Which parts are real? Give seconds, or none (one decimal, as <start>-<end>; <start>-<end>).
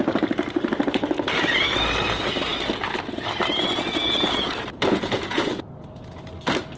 0.0-3.6; 6.3-6.8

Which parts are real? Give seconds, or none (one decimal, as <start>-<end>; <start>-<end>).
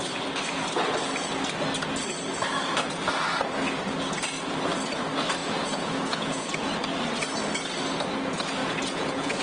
0.0-5.4; 6.7-8.6